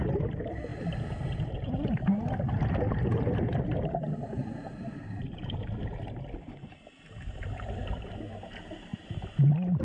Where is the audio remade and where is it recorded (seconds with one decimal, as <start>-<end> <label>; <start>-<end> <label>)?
0.0-0.7 recorded; 0.7-5.5 remade; 5.5-8.9 recorded; 8.9-9.8 remade